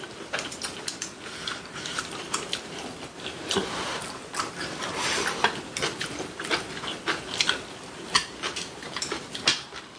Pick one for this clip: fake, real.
fake